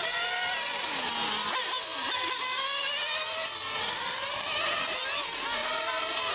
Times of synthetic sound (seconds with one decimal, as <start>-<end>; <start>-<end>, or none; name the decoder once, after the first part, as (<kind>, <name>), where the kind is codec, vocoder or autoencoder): none